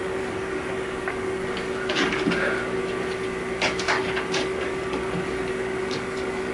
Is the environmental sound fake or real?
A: fake